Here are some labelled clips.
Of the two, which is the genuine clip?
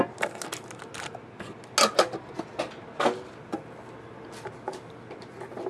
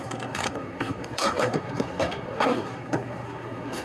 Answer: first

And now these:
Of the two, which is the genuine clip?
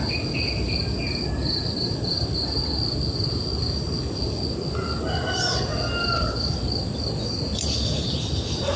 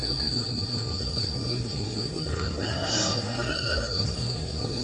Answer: first